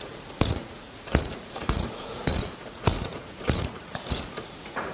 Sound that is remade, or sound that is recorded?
remade